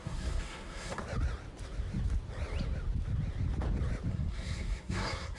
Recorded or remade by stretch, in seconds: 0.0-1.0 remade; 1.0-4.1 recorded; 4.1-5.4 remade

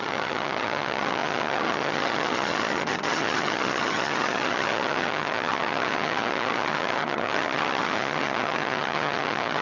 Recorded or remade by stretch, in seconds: 0.0-9.6 remade

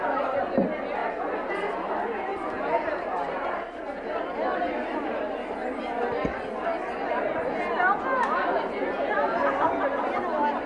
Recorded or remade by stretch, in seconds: 0.0-10.7 recorded

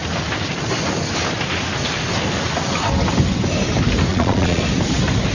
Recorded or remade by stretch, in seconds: 0.0-4.1 recorded; 4.1-4.6 remade; 4.6-5.3 recorded

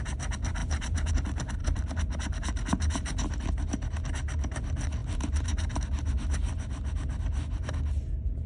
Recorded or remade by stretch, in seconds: 0.0-0.6 recorded; 0.6-1.1 remade; 1.1-1.6 recorded; 1.6-3.3 remade; 3.3-5.0 recorded; 5.0-5.8 remade; 5.8-8.5 recorded

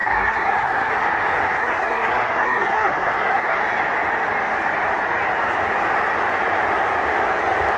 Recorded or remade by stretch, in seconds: 0.0-0.9 remade; 0.9-1.6 recorded; 1.6-3.6 remade; 3.6-7.8 recorded